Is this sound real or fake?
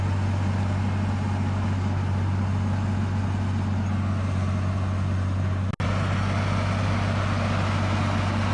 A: real